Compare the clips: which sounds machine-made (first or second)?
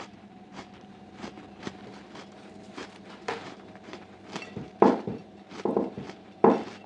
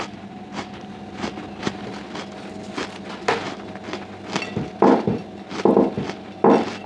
first